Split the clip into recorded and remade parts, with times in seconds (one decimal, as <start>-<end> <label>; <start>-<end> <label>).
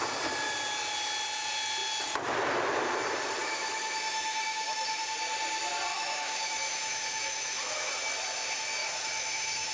0.0-3.4 recorded; 3.4-5.0 remade; 5.0-5.9 recorded; 5.9-7.9 remade; 7.9-8.8 recorded; 8.8-9.7 remade